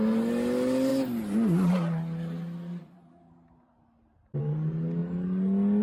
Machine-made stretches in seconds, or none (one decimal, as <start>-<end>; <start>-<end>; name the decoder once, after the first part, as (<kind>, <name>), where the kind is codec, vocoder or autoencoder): none